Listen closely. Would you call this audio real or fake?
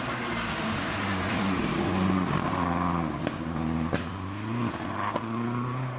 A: real